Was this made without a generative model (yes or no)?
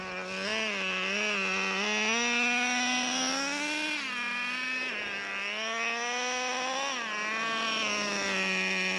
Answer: yes